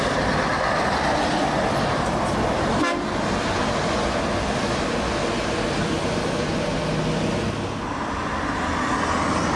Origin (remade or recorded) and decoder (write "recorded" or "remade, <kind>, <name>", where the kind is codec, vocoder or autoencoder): recorded